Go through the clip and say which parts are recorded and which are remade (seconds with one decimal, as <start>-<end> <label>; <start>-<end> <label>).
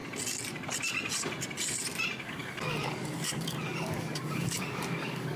0.0-2.2 recorded; 2.2-5.4 remade